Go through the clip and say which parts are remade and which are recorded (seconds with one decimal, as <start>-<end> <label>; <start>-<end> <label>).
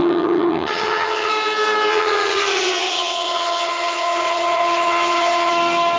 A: 0.0-1.3 remade; 1.3-1.9 recorded; 1.9-5.5 remade; 5.5-6.0 recorded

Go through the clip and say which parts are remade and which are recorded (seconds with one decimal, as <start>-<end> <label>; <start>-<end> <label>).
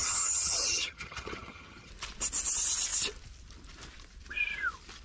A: 0.0-1.9 remade; 1.9-5.0 recorded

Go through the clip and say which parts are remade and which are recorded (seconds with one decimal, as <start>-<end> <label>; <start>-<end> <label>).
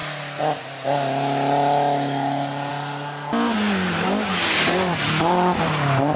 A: 0.0-6.2 recorded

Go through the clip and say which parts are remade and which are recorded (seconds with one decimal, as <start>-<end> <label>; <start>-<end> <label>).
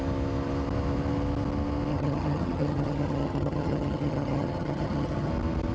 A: 0.0-1.9 recorded; 1.9-5.3 remade; 5.3-5.7 recorded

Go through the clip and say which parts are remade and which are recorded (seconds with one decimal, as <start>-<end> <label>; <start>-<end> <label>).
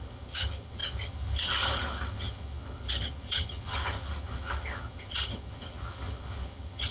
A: 0.0-6.9 remade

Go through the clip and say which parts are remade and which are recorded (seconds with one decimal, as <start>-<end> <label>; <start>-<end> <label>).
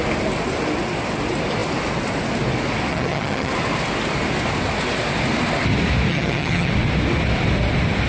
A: 0.0-2.9 recorded; 2.9-3.5 remade; 3.5-6.1 recorded; 6.1-6.7 remade; 6.7-8.1 recorded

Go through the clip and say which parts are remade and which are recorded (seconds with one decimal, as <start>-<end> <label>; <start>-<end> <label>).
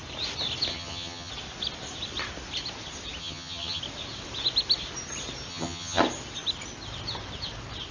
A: 0.0-0.7 recorded; 0.7-1.3 remade; 1.3-3.2 recorded; 3.2-3.8 remade; 3.8-5.5 recorded; 5.5-6.0 remade; 6.0-7.9 recorded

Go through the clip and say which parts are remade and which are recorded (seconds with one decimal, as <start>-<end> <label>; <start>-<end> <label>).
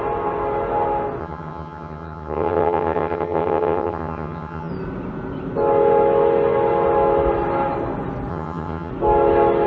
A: 0.0-1.2 recorded; 1.2-4.7 remade; 4.7-8.3 recorded; 8.3-8.9 remade; 8.9-9.7 recorded